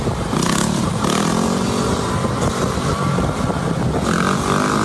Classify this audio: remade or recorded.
recorded